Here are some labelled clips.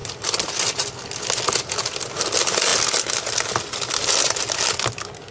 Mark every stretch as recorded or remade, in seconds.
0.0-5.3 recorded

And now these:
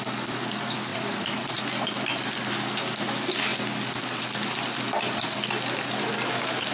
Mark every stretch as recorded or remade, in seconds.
0.0-0.9 recorded; 0.9-1.6 remade; 1.6-6.7 recorded

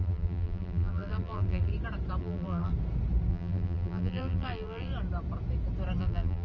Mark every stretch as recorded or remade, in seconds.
0.0-1.7 remade; 1.7-2.2 recorded; 2.2-2.7 remade; 2.7-3.3 recorded; 3.3-4.9 remade; 4.9-6.0 recorded; 6.0-6.4 remade

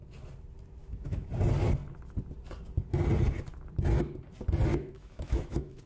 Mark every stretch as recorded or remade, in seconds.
0.0-0.8 recorded; 0.8-1.3 remade; 1.3-4.7 recorded; 4.7-5.9 remade

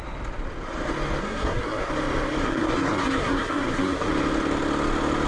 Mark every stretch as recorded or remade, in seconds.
0.0-1.2 recorded; 1.2-1.9 remade; 1.9-2.4 recorded; 2.4-4.1 remade; 4.1-5.3 recorded

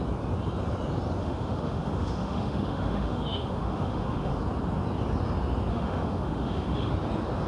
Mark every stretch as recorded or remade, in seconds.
0.0-1.2 recorded; 1.2-4.3 remade; 4.3-5.7 recorded; 5.7-6.9 remade; 6.9-7.5 recorded